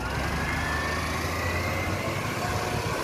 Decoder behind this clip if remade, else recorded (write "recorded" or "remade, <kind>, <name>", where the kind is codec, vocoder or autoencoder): recorded